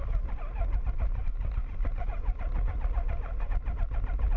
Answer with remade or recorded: recorded